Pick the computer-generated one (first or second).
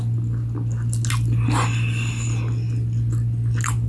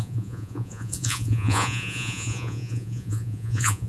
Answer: second